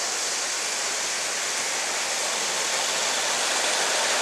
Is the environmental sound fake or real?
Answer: real